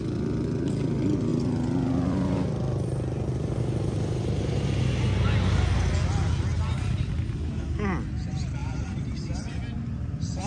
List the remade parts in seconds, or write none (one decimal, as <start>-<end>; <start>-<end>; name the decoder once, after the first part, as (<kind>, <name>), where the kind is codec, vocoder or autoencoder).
6.5-7.1 (vocoder, BigVGAN v2); 8.6-9.5